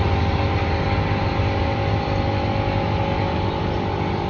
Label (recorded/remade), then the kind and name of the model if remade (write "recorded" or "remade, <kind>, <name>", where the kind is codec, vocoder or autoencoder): recorded